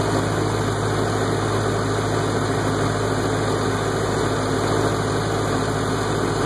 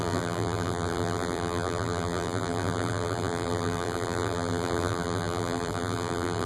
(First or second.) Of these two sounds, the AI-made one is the second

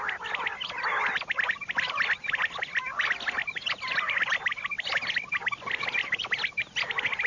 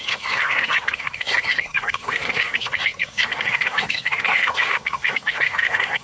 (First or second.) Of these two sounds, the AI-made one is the second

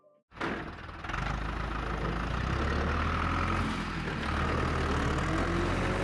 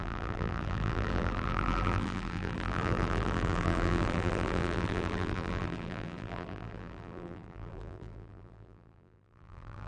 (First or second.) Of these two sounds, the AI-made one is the second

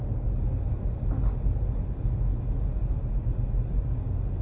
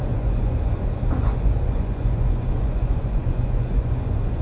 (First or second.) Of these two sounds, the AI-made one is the second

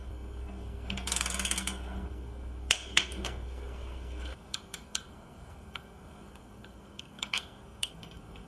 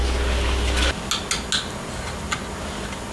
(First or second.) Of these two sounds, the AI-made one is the first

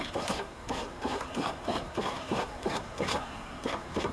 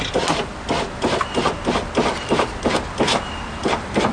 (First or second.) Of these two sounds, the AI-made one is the first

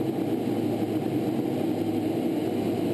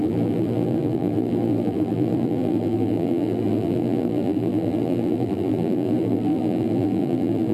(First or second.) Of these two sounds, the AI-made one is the second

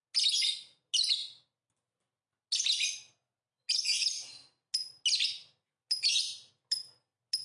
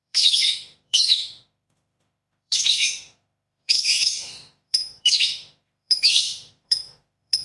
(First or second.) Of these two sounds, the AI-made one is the second